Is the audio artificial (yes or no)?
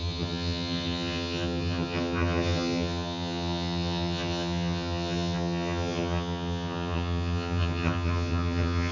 yes